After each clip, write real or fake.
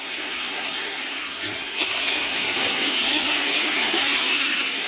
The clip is fake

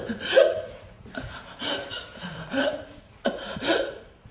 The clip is fake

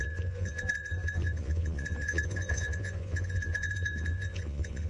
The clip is fake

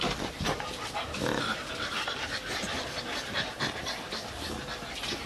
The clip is fake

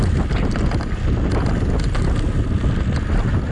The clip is real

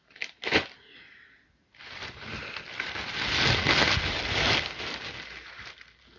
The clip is real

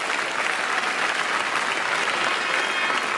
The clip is real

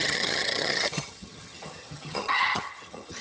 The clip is fake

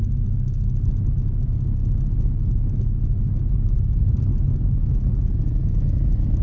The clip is real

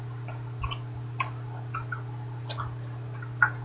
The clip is real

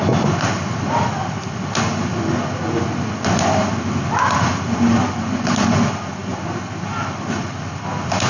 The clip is real